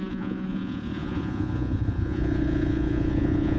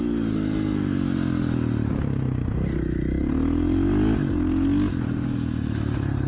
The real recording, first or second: second